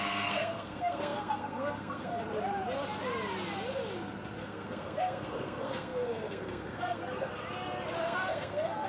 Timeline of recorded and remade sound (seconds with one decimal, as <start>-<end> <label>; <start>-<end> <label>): 0.0-2.2 remade; 2.2-4.4 recorded; 4.4-7.3 remade; 7.3-8.0 recorded; 8.0-8.9 remade